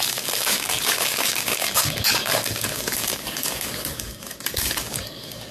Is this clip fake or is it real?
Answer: fake